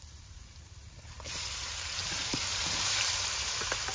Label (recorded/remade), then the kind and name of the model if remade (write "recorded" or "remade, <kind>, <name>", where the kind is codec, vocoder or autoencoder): remade, vocoder, BigVGAN v2